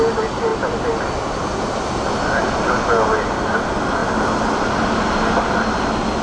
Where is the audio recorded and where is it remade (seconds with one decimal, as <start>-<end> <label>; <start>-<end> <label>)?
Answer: 0.0-6.2 recorded